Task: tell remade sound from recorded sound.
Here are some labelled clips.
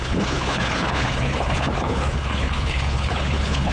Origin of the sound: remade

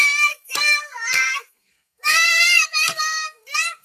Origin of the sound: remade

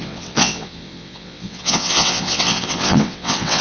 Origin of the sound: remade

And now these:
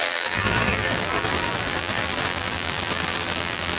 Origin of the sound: remade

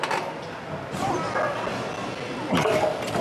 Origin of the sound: recorded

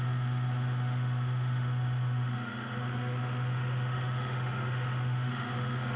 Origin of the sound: remade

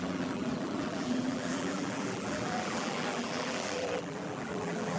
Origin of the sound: remade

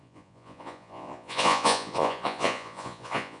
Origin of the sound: remade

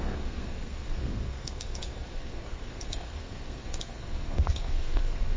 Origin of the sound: remade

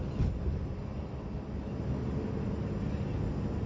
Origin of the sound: recorded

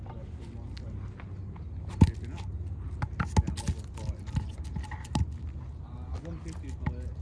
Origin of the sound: recorded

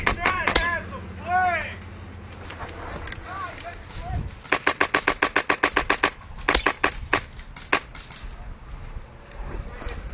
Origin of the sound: recorded